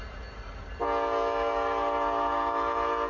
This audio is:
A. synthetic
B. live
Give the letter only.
B